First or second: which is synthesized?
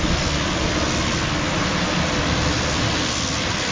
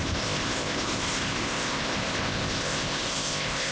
second